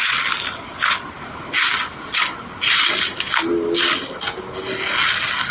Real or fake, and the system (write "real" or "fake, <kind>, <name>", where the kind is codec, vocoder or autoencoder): real